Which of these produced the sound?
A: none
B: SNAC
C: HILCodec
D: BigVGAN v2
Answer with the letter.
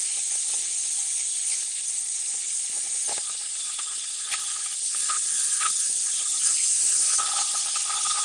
C